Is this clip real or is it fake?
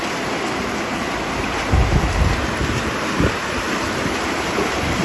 real